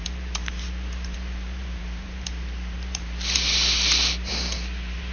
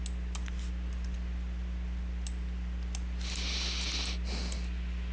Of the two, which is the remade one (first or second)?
first